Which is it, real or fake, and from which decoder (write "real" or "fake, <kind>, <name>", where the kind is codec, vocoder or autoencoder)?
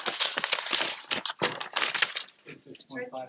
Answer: real